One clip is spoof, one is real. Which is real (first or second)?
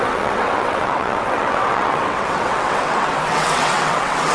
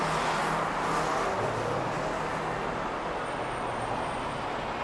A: second